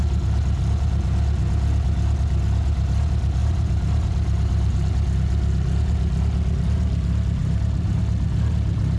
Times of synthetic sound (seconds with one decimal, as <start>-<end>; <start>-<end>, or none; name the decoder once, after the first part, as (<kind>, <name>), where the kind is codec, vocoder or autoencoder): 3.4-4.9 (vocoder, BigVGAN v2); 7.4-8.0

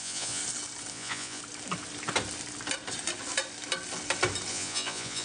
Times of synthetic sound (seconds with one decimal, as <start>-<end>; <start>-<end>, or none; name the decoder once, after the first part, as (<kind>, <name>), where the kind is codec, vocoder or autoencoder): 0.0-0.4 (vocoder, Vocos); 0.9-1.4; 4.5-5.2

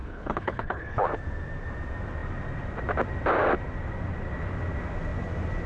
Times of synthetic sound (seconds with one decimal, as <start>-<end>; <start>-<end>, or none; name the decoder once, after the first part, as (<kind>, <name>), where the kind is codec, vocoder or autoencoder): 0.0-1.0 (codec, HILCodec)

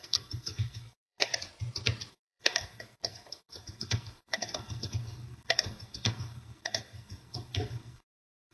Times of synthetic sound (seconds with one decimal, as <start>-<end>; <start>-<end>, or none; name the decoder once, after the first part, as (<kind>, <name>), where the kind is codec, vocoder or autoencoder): 0.0-1.3 (codec, SNAC); 2.1-8.5

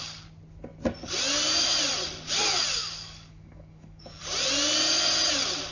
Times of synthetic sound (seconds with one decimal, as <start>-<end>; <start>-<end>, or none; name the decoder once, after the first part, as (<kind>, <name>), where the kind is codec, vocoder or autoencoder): 2.8-4.2 (codec, DAC)